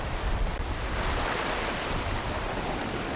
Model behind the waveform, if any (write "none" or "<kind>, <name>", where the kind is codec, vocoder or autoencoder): none